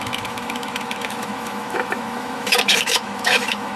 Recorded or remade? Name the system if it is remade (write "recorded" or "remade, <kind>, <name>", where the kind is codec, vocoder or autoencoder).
remade, autoencoder, DAC-VAE